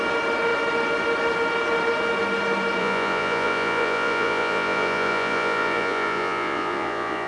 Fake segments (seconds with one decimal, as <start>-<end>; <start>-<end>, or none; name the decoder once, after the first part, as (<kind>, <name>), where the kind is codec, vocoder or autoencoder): 2.8-7.3 (vocoder, Vocos)